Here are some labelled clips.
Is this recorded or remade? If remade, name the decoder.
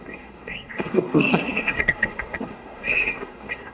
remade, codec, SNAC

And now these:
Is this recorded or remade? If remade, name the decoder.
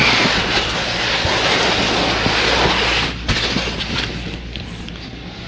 recorded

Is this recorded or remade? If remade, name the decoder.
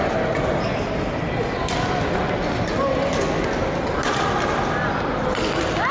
recorded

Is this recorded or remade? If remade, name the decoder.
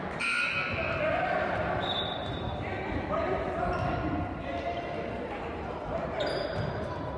recorded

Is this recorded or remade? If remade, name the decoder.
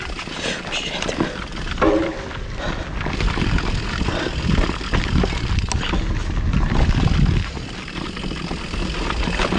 recorded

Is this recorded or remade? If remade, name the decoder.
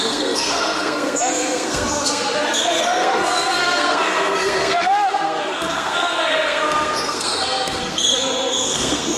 remade, codec, SNAC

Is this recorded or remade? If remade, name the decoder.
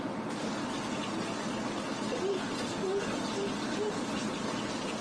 recorded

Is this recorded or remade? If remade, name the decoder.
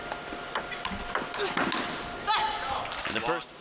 recorded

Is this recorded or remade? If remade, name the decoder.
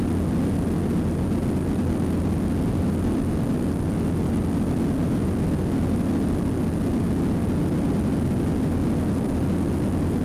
recorded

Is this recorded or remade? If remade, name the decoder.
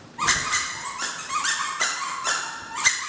remade, vocoder, BigVGAN v2